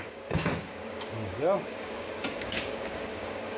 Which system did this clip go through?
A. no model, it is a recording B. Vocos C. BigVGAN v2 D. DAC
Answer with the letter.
D